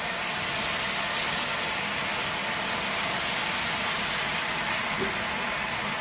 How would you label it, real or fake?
real